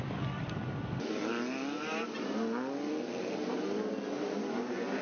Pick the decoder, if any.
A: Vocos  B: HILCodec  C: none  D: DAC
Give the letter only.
C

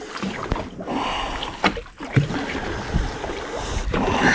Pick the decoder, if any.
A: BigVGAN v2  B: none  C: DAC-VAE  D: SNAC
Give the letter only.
B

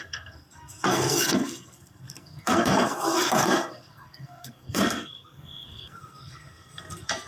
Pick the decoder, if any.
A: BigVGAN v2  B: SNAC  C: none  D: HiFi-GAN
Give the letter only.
B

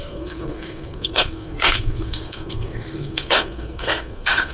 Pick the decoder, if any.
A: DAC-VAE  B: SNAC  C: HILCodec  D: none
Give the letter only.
B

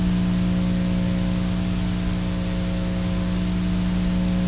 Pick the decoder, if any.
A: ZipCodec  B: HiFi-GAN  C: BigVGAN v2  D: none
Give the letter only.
D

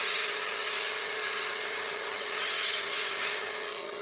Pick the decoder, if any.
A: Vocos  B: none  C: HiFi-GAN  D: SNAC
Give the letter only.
C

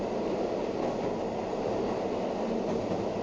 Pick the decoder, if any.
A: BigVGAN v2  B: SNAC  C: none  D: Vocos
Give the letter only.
C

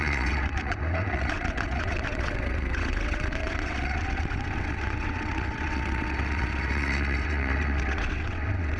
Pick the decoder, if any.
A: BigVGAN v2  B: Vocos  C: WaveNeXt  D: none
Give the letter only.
C